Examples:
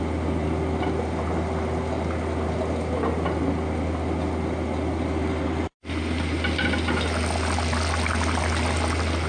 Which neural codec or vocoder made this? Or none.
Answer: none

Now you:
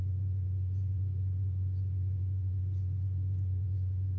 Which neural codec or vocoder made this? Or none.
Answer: vocoder, Vocos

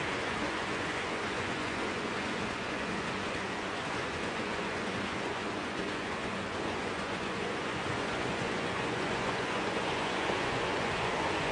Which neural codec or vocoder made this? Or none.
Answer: vocoder, Vocos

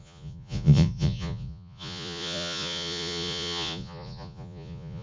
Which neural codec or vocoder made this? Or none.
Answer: vocoder, Vocos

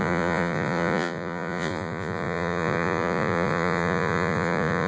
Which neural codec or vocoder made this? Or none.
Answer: vocoder, Vocos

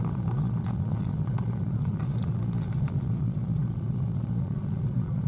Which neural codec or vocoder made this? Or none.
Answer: vocoder, Vocos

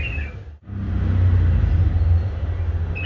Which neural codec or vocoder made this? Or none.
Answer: none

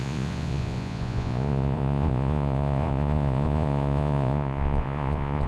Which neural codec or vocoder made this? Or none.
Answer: vocoder, Vocos